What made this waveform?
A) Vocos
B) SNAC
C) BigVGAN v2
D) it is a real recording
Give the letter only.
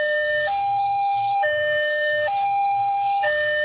B